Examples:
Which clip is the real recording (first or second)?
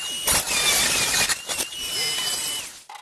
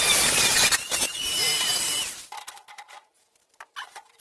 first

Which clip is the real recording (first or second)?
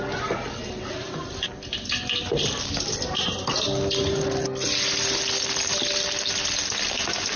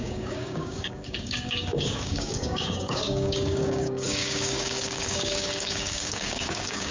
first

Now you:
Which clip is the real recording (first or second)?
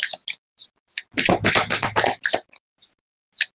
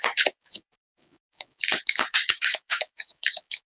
first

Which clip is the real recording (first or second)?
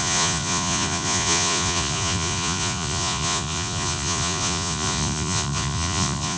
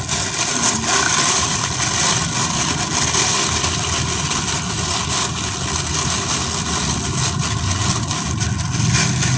second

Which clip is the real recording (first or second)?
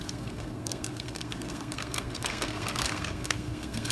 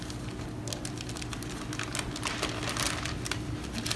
second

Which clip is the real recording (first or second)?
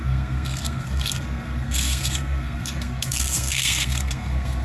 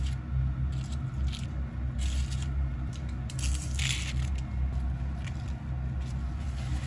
second